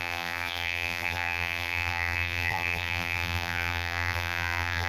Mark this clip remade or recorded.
remade